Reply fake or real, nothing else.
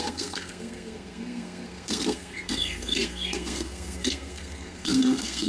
fake